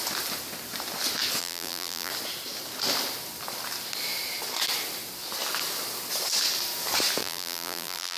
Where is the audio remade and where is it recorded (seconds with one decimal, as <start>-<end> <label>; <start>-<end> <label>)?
0.0-1.4 recorded; 1.4-2.1 remade; 2.1-7.2 recorded; 7.2-8.2 remade